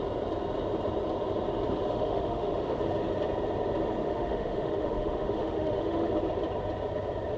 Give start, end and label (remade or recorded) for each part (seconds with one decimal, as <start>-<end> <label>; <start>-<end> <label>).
0.0-1.9 recorded; 1.9-2.8 remade; 2.8-4.0 recorded; 4.0-6.1 remade; 6.1-7.4 recorded